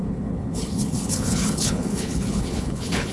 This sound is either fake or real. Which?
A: fake